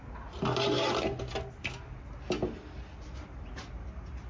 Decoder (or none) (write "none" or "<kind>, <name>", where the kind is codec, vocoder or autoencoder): none